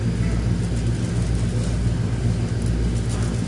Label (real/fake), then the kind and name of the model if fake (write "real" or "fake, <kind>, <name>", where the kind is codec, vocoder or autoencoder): real